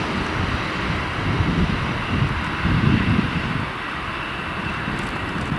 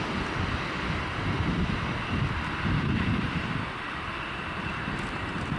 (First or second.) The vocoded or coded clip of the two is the second